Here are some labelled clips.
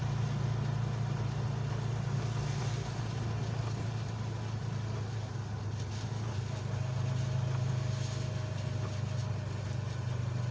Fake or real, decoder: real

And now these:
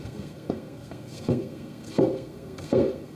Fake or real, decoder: fake, codec, SNAC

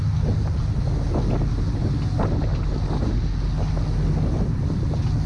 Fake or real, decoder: real